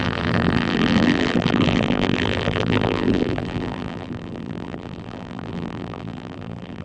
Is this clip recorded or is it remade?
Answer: remade